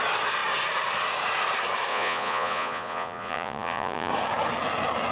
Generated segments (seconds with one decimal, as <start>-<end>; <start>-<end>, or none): 1.9-4.1